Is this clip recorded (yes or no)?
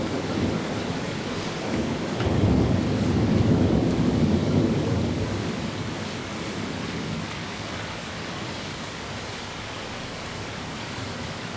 no